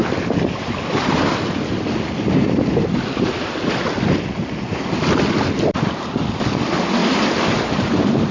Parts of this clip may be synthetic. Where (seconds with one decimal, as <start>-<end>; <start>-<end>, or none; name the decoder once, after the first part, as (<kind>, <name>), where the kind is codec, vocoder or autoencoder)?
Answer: none